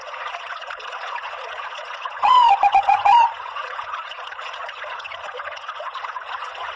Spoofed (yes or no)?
yes